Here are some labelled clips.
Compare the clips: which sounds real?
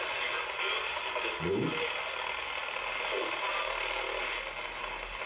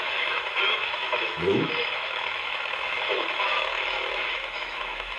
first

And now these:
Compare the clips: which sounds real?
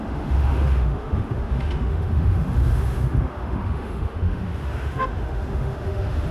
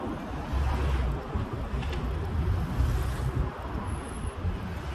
second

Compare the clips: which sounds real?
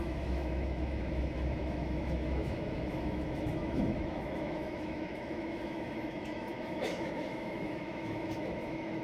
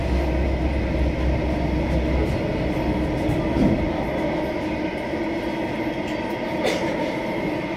second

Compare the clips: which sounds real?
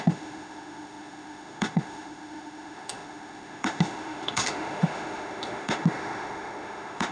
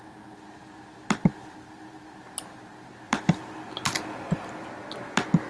second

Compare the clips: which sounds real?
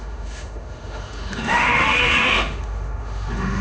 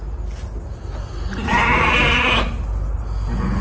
second